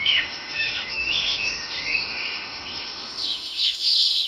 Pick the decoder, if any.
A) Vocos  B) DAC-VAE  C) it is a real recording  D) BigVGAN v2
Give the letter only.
B